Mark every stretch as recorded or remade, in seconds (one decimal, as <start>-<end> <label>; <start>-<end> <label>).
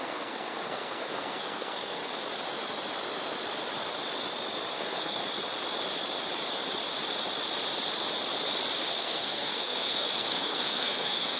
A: 0.0-2.0 remade; 2.0-4.7 recorded; 4.7-5.2 remade; 5.2-8.9 recorded; 8.9-11.4 remade